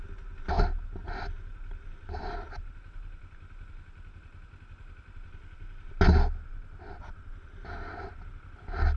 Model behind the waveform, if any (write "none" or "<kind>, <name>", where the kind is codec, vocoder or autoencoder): none